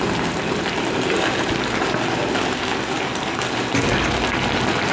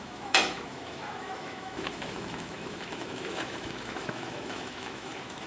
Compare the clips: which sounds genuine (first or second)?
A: first